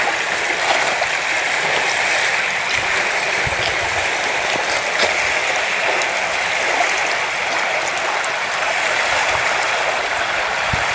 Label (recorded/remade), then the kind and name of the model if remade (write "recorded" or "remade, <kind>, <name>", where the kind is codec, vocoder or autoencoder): recorded